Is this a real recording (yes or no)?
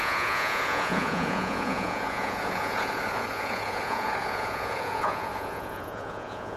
no